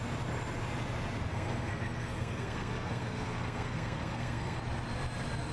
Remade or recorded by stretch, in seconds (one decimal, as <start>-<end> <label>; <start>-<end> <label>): 0.0-1.3 recorded; 1.3-4.6 remade; 4.6-5.5 recorded